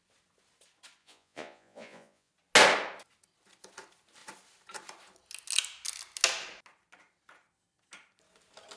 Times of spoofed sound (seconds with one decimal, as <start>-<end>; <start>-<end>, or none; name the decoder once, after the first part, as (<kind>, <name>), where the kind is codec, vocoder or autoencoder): 1.0-2.3 (vocoder, Vocos)

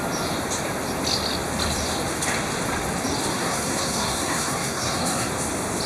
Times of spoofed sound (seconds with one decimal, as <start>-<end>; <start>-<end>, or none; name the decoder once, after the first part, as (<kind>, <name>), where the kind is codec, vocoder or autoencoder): 3.3-5.3 (codec, SNAC)

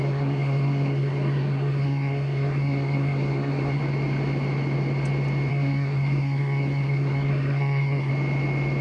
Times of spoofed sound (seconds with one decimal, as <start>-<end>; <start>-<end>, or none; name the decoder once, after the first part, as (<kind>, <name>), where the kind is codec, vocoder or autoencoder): 0.0-3.8 (codec, SNAC); 5.5-8.1

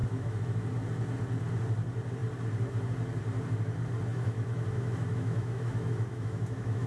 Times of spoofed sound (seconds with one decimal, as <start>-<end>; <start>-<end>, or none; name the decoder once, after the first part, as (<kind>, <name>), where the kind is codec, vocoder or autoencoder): 0.0-0.7 (autoencoder, DAC-VAE); 4.1-6.9

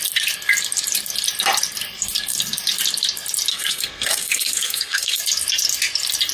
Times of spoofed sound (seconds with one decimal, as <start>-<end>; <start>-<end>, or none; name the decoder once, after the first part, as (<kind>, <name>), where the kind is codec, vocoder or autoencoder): 3.5-5.2 (codec, SNAC)

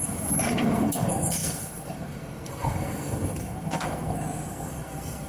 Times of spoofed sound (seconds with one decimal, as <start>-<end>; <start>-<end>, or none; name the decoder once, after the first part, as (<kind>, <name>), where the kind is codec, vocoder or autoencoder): 0.0-5.3 (codec, SNAC)

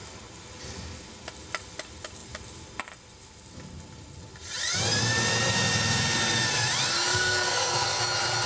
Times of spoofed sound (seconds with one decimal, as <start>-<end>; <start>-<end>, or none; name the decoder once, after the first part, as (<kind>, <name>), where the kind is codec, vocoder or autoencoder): 7.1-8.0 (codec, SNAC)